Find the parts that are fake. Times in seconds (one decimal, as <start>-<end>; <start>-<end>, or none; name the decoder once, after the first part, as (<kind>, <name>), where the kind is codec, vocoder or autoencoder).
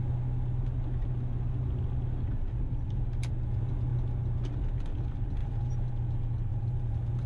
5.4-5.9 (vocoder, BigVGAN v2); 6.5-7.3